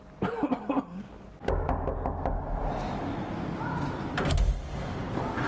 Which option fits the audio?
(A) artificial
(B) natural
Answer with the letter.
B